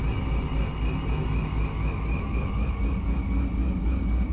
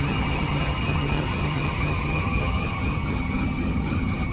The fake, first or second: second